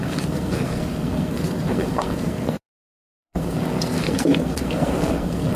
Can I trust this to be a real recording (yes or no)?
no